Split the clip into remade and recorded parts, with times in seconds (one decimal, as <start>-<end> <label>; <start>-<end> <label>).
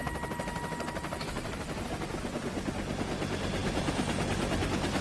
0.0-5.0 recorded